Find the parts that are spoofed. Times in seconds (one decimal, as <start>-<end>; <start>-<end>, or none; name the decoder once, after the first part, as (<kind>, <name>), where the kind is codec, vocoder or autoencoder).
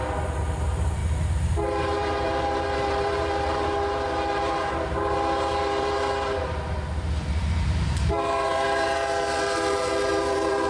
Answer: 0.0-10.7 (vocoder, BigVGAN v2)